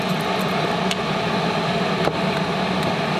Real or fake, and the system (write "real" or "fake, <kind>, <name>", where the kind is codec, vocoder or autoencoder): real